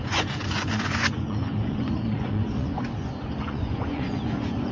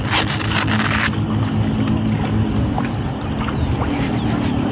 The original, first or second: second